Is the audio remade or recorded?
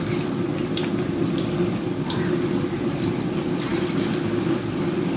recorded